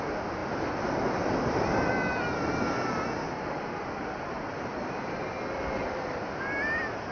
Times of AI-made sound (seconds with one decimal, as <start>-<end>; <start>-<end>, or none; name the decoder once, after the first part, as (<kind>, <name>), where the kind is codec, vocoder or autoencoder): none